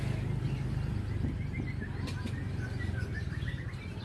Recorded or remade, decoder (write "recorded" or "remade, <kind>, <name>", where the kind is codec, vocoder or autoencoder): recorded